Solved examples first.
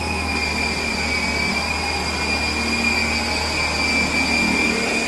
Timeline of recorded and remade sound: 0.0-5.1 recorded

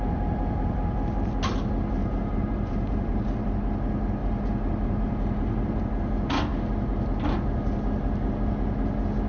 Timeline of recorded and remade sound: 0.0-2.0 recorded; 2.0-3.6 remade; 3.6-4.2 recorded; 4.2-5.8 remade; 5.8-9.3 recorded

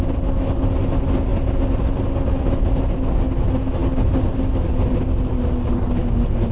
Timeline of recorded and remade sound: 0.0-6.5 recorded

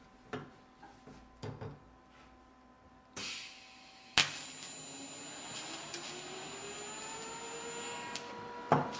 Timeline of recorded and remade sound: 0.0-9.0 recorded

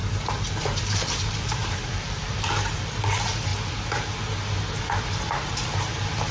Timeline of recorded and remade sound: 0.0-0.6 recorded; 0.6-3.5 remade; 3.5-5.1 recorded; 5.1-6.3 remade